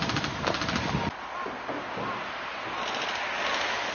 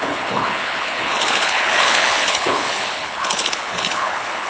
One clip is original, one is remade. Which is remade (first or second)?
second